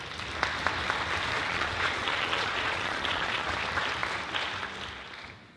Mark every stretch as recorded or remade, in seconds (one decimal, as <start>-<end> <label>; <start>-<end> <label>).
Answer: 0.0-1.5 recorded; 1.5-3.5 remade; 3.5-5.6 recorded